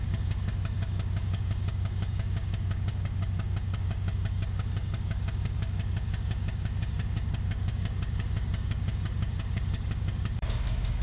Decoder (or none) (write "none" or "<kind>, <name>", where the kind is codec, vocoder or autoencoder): codec, DAC